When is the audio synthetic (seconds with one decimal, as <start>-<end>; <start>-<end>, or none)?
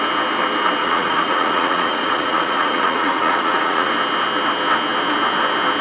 0.8-3.9